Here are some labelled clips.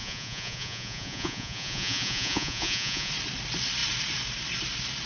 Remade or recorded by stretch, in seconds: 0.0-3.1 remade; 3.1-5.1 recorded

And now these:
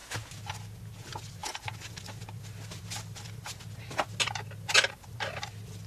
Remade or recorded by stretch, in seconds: 0.0-5.9 recorded

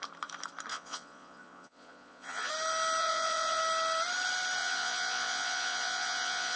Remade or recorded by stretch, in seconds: 0.0-0.7 recorded; 0.7-2.5 remade; 2.5-3.0 recorded; 3.0-3.6 remade; 3.6-4.6 recorded; 4.6-6.6 remade

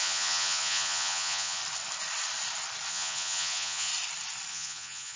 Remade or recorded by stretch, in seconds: 0.0-1.6 remade; 1.6-2.9 recorded; 2.9-3.9 remade; 3.9-4.5 recorded; 4.5-5.2 remade

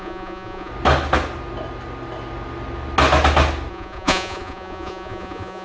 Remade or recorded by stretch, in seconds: 0.0-0.7 remade; 0.7-3.7 recorded; 3.7-5.6 remade